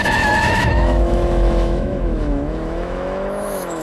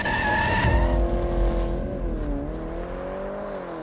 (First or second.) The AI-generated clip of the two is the first